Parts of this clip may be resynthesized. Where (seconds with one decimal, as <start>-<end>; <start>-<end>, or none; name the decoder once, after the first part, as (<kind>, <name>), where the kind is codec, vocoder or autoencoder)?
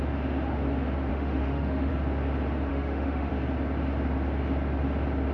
1.1-1.9 (autoencoder, DAC-VAE); 2.7-3.3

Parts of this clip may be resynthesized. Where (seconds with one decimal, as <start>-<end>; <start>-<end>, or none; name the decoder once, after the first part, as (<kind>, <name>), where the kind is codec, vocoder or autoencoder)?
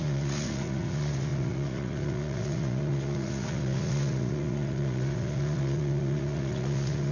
0.0-7.1 (vocoder, Vocos)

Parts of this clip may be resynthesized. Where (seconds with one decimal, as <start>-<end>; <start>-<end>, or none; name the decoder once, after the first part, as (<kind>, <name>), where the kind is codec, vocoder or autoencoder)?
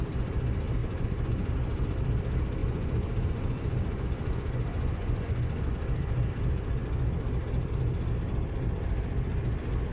0.8-1.5 (vocoder, Vocos); 2.6-5.7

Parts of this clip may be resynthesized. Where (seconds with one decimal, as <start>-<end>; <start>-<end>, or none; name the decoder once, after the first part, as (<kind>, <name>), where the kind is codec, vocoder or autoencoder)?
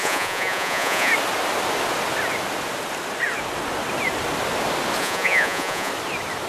0.0-1.1 (vocoder, Vocos); 5.0-5.9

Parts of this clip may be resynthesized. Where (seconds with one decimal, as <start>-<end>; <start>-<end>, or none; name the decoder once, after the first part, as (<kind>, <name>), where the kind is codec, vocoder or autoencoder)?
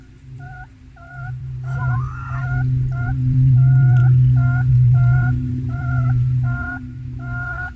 0.0-2.4 (vocoder, BigVGAN v2); 3.0-4.0; 4.7-7.8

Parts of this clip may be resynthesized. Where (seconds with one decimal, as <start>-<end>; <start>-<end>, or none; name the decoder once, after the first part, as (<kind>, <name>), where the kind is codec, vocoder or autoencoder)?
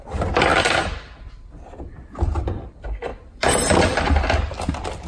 0.0-0.5 (vocoder, BigVGAN v2); 1.2-5.1